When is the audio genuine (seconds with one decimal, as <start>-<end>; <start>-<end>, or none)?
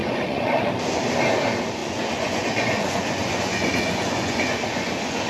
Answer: 0.7-1.8